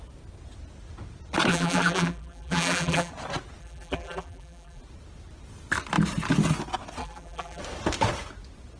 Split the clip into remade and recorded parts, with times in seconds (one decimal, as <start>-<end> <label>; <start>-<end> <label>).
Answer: 0.0-1.5 recorded; 1.5-3.1 remade; 3.1-3.6 recorded; 3.6-4.8 remade; 4.8-7.0 recorded; 7.0-7.6 remade; 7.6-8.8 recorded